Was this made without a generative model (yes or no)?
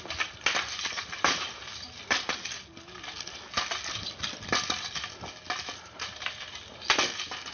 yes